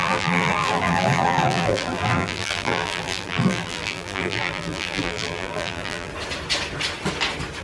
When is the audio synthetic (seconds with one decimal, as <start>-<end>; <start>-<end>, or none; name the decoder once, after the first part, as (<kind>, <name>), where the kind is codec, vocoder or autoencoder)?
0.0-6.1 (vocoder, BigVGAN v2)